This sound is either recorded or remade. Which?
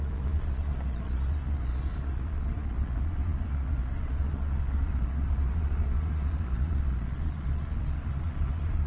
remade